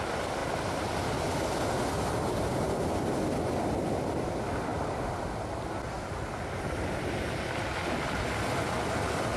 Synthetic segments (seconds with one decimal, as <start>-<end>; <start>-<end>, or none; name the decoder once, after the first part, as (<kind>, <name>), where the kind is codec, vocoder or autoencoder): none